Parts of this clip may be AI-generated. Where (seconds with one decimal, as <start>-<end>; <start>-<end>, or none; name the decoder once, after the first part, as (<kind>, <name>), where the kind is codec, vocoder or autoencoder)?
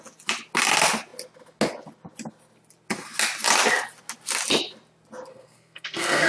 5.3-6.3 (codec, SNAC)